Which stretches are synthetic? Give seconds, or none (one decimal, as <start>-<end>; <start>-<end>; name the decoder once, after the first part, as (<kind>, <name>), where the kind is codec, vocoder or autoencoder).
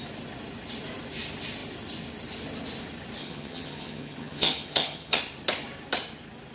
3.2-5.2 (vocoder, HiFi-GAN)